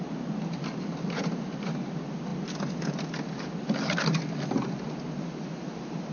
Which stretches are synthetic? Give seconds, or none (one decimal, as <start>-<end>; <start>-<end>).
none